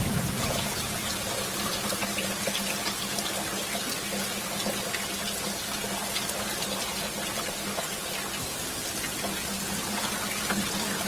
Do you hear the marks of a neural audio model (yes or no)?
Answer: no